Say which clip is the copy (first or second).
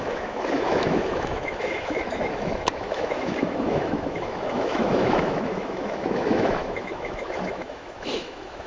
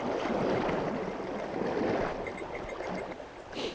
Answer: first